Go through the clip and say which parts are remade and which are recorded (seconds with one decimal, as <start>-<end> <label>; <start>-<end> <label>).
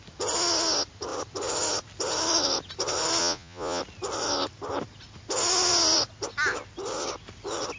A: 0.0-3.2 recorded; 3.2-3.8 remade; 3.8-7.8 recorded